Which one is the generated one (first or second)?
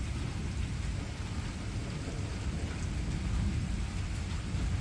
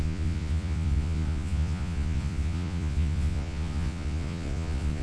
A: second